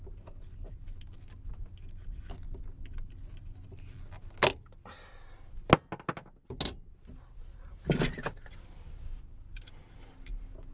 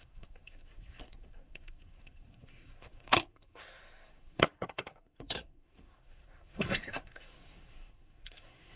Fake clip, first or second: second